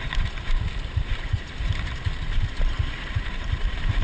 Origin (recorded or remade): remade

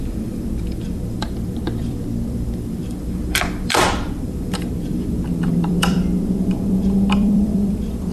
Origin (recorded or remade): remade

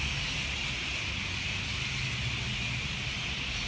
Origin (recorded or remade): recorded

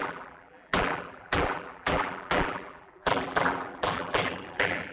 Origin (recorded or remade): remade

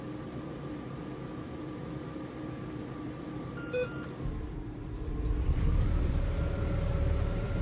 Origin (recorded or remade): remade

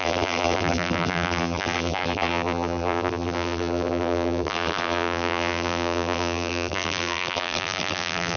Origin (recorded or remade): remade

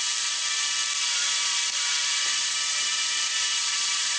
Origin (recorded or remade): remade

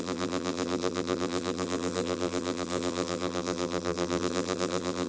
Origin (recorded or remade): remade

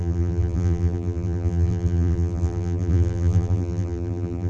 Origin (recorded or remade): remade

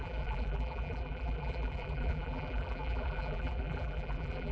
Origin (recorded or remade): remade